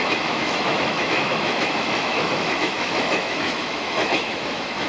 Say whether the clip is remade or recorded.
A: remade